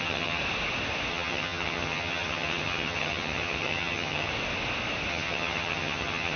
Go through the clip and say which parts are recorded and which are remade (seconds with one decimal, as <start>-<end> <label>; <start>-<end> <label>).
0.0-0.4 remade; 0.4-1.1 recorded; 1.1-4.3 remade; 4.3-5.1 recorded; 5.1-6.4 remade